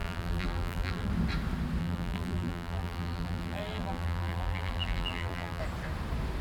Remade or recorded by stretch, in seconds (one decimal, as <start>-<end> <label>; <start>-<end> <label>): 0.0-1.1 remade; 1.1-1.8 recorded; 1.8-5.6 remade; 5.6-6.4 recorded